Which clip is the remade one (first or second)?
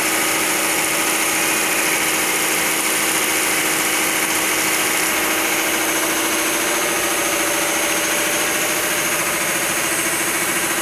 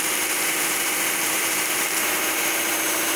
second